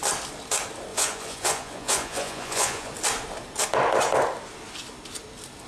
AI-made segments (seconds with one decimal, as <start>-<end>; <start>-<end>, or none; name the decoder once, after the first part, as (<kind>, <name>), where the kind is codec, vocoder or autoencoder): 0.9-2.9 (vocoder, Vocos)